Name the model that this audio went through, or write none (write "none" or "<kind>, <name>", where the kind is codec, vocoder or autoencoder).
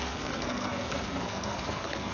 codec, SNAC